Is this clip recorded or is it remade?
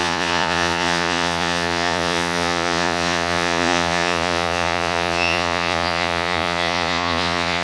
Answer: remade